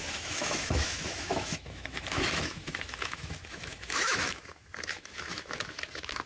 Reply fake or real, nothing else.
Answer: fake